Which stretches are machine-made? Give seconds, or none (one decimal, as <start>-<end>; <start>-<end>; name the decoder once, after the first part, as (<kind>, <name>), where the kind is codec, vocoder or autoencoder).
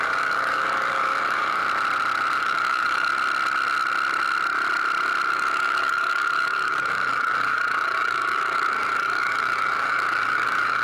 0.0-1.6 (codec, DAC); 2.4-3.1; 5.3-10.8